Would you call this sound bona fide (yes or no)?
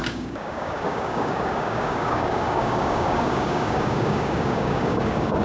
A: no